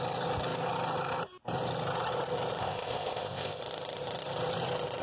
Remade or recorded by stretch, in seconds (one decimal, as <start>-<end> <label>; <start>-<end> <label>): 0.0-2.6 recorded; 2.6-3.6 remade; 3.6-5.0 recorded